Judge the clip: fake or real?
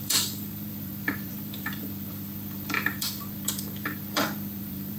fake